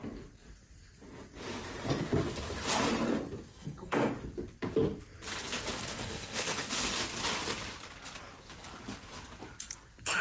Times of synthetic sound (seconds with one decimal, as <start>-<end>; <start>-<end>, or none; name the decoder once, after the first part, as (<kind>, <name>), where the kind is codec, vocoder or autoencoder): 3.5-4.1 (codec, SNAC); 5.8-6.7